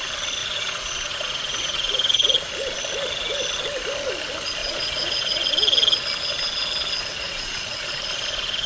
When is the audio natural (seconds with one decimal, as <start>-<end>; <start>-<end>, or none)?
0.0-0.4; 2.5-4.6; 5.5-7.1; 8.0-8.7